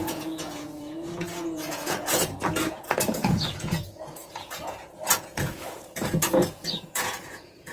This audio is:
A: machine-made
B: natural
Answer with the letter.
A